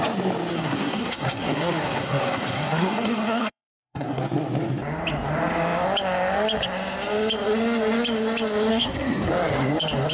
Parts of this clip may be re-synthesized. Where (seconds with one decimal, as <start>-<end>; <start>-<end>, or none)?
0.5-4.2; 8.7-9.3